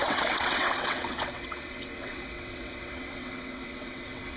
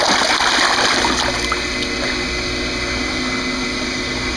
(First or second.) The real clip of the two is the second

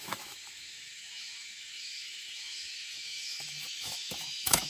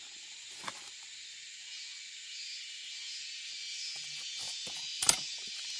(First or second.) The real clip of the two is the second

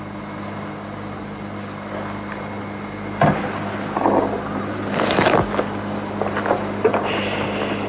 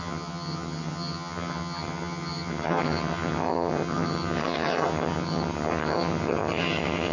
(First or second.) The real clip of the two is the first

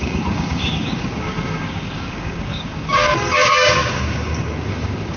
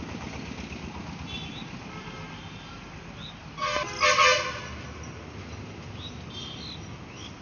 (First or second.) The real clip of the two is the second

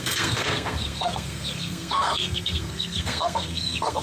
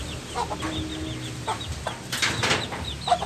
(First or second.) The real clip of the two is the second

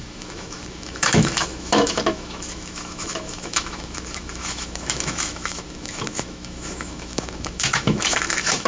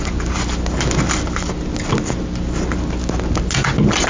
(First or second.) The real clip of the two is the second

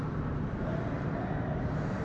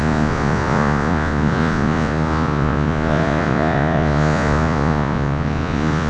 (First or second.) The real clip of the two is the first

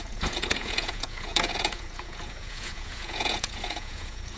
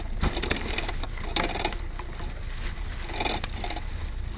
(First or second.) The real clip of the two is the second